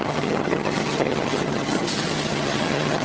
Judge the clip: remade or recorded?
remade